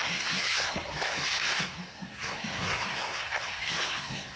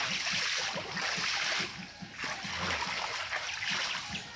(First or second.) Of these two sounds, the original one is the second